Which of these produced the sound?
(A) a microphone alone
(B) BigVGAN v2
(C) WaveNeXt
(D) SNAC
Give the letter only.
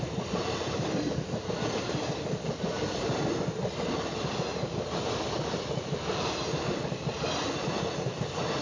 A